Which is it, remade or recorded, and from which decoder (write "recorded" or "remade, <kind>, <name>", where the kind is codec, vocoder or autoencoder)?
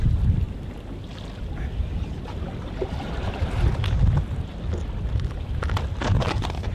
recorded